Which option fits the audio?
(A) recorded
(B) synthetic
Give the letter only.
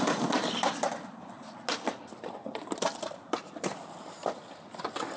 A